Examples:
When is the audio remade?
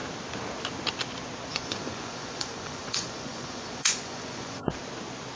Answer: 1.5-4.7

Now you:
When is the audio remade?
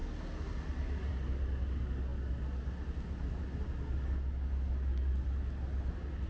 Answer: none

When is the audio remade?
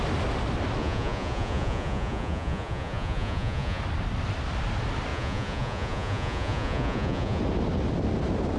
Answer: 0.8-3.8; 5.1-7.4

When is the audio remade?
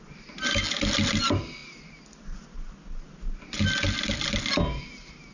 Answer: none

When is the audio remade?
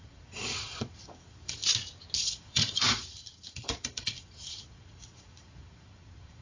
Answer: 0.0-1.6; 2.2-6.4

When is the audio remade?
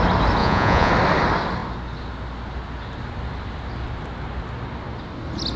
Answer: 0.4-0.9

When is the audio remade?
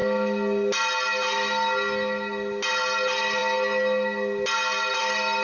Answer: none